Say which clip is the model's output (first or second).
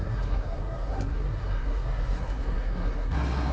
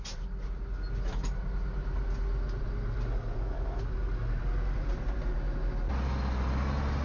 first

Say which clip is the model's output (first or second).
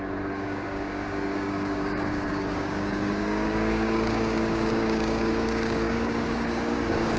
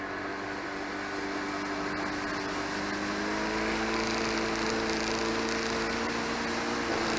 first